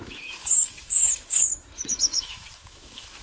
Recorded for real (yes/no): no